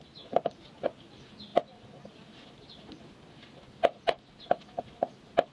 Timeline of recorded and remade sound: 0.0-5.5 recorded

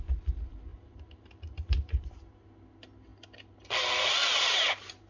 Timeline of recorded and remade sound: 0.0-0.7 recorded; 0.7-2.1 remade; 2.1-5.1 recorded